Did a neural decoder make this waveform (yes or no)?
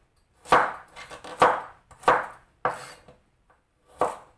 no